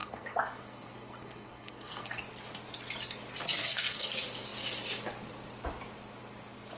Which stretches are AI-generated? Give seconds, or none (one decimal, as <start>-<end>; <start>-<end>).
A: 0.0-2.2; 3.6-4.1